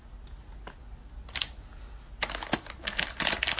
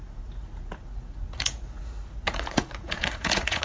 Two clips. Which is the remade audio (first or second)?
second